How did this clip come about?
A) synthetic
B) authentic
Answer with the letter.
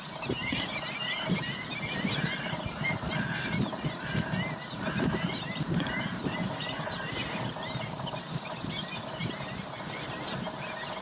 A